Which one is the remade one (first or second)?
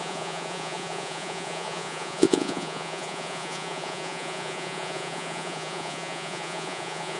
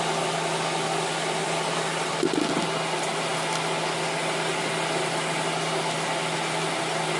first